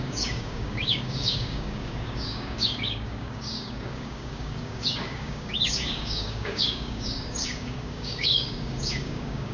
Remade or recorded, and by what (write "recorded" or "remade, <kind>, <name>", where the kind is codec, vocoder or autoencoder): remade, codec, DAC